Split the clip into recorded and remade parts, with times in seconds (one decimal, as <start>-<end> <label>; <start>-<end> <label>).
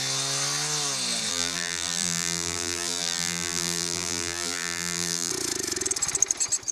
0.0-1.3 recorded; 1.3-5.3 remade; 5.3-6.7 recorded